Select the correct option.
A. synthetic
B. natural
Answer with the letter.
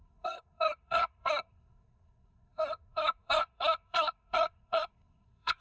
A